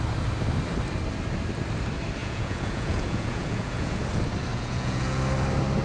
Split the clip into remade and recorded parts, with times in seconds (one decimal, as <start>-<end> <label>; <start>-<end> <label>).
0.0-2.2 recorded; 2.2-4.0 remade; 4.0-4.5 recorded; 4.5-5.2 remade; 5.2-5.8 recorded